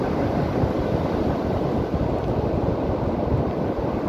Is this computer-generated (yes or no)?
no